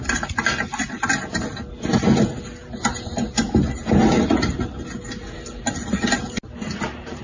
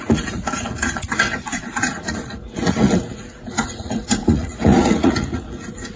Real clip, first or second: first